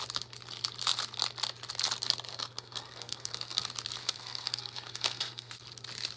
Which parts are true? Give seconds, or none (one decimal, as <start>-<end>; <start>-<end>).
0.0-2.3; 3.6-4.0; 5.5-6.2